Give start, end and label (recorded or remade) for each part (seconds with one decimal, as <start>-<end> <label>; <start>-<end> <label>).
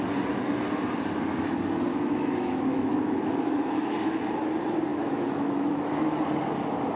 0.0-1.9 recorded; 1.9-4.2 remade; 4.2-4.9 recorded; 4.9-6.2 remade; 6.2-7.0 recorded